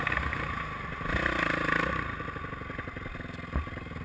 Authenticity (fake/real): real